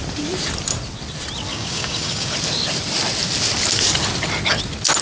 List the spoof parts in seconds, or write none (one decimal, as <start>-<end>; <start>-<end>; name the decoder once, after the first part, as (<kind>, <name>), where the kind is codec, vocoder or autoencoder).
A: 1.5-2.3 (codec, DAC)